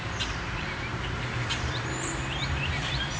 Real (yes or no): no